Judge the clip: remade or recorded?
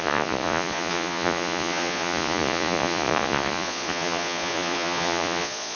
remade